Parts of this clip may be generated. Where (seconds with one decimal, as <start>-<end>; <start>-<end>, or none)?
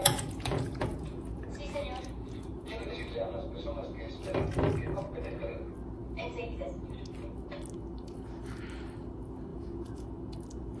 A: 0.0-4.1; 9.5-10.1